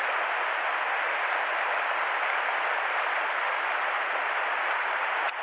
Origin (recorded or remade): recorded